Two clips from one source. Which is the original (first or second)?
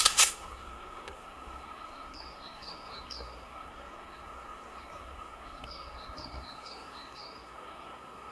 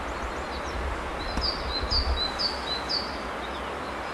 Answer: second